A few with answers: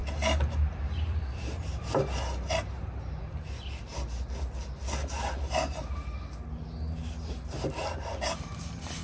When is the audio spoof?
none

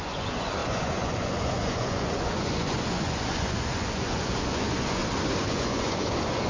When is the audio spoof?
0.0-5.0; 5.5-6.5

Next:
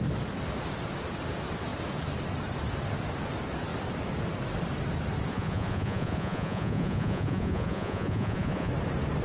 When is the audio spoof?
5.3-8.7

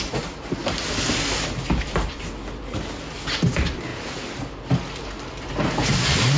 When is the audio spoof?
none

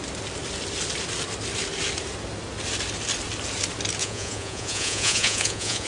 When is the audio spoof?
4.0-5.9

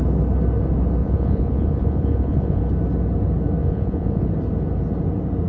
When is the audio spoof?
1.0-2.6; 3.6-4.3